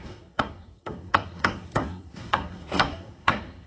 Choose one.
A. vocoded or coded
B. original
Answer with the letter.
A